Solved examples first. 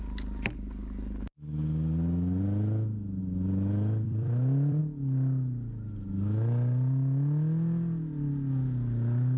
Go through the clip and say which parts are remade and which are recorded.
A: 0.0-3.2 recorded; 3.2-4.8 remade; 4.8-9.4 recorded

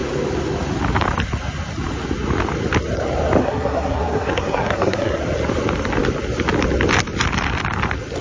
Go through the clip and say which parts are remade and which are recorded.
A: 0.0-3.4 recorded; 3.4-5.2 remade; 5.2-8.2 recorded

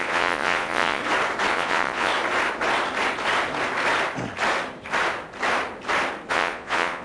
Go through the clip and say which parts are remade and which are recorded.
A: 0.0-1.0 remade; 1.0-1.5 recorded; 1.5-2.1 remade; 2.1-6.3 recorded; 6.3-7.0 remade

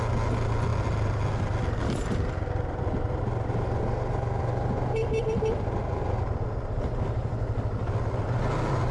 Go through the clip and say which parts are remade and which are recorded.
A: 0.0-0.7 recorded; 0.7-1.3 remade; 1.3-8.9 recorded